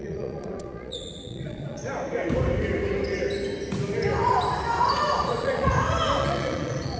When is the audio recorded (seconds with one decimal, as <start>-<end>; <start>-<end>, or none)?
1.8-5.3; 5.7-6.2